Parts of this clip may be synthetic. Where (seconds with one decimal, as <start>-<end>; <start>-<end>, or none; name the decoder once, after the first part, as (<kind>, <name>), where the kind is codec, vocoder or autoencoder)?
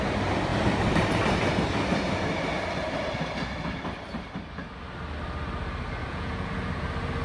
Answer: 6.0-6.5 (vocoder, Vocos)